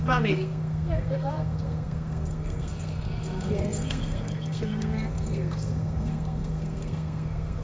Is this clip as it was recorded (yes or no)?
no